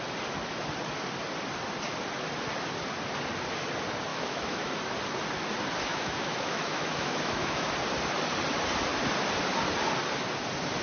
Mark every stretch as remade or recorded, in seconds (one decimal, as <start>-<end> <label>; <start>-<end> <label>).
0.0-4.1 recorded; 4.1-4.7 remade; 4.7-5.9 recorded; 5.9-7.7 remade; 7.7-10.8 recorded